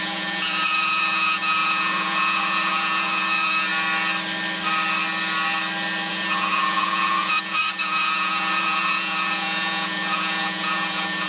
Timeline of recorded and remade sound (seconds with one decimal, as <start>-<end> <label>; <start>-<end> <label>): 0.0-3.7 remade; 3.7-6.1 recorded; 6.1-11.3 remade